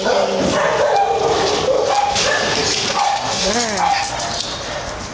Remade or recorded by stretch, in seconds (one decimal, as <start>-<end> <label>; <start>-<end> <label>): 0.0-2.9 recorded; 2.9-3.5 remade; 3.5-5.1 recorded